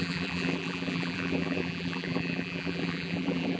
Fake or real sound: fake